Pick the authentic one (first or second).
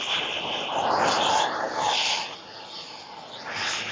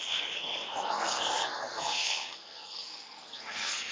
first